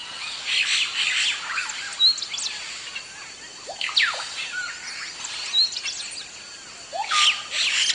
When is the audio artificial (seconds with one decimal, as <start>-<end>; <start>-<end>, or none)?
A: none